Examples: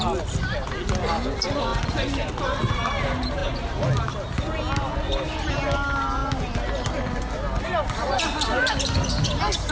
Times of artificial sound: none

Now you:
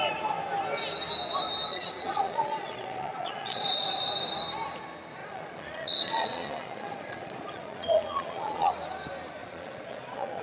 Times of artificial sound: 1.7-4.0 (vocoder, Vocos); 5.2-8.7; 9.4-10.4

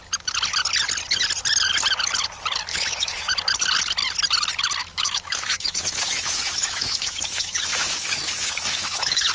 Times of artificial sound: 2.7-3.3 (autoencoder, DAC-VAE); 4.8-9.3

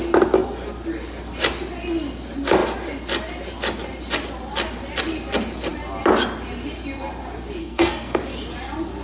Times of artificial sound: 7.6-8.2 (codec, SNAC)

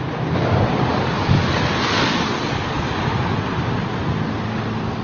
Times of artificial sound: none

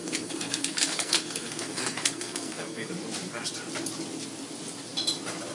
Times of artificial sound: 0.0-2.9 (codec, SNAC)

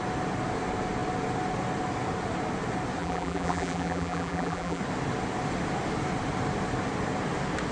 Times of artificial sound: 3.0-4.8 (vocoder, BigVGAN v2)